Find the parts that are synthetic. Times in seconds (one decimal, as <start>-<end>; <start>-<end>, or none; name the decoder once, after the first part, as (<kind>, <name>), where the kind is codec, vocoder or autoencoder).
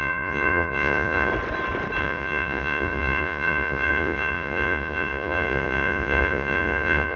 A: 0.0-1.3 (vocoder, Vocos); 2.0-7.2